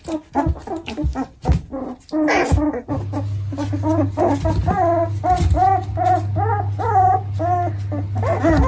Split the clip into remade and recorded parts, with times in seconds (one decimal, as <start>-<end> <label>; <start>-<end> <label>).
0.0-8.7 recorded